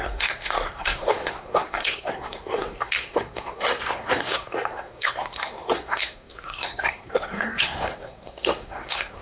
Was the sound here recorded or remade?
remade